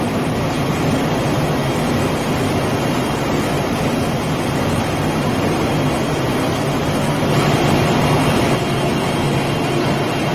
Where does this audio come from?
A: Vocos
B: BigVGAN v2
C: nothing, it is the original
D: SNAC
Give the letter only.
C